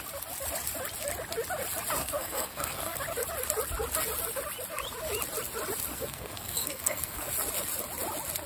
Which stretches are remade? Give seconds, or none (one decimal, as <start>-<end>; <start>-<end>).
2.0-3.0; 5.9-7.3